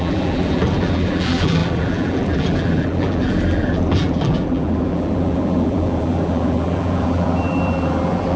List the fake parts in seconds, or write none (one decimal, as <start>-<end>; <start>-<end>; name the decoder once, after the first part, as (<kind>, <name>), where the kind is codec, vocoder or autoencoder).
0.0-8.4 (vocoder, BigVGAN v2)